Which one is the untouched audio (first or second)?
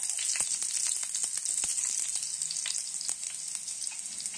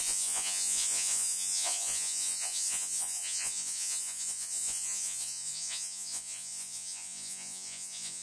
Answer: first